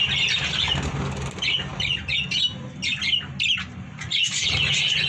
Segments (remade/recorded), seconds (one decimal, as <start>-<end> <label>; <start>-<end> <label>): 0.0-5.1 recorded